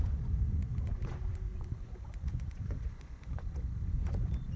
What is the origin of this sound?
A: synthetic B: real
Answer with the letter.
A